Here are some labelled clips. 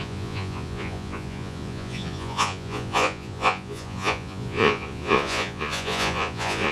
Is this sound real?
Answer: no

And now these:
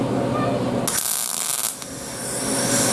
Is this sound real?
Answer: yes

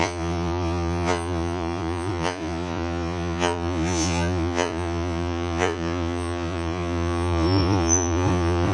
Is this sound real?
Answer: no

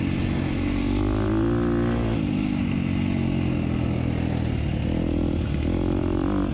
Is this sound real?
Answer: yes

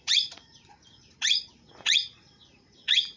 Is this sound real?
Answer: no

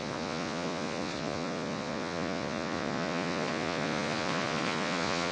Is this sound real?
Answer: no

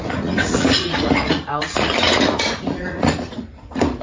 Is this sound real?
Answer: no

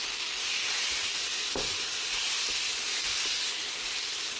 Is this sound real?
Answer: yes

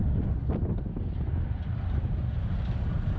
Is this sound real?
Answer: yes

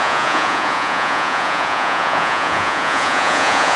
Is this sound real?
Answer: no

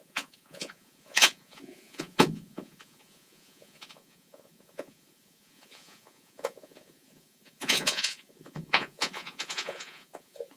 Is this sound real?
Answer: no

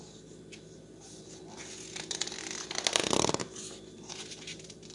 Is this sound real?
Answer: yes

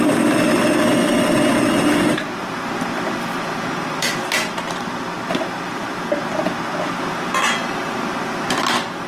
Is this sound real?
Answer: yes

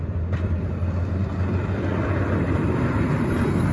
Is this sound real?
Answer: yes